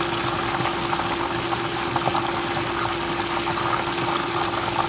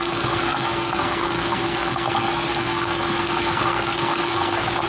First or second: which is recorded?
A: first